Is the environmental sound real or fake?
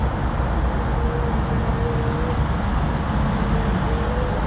real